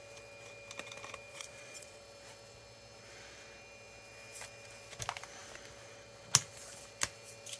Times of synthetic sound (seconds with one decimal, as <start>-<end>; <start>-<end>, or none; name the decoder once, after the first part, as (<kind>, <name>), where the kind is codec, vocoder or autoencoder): 1.3-2.0 (vocoder, Vocos)